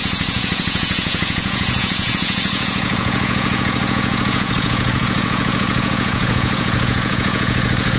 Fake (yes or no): yes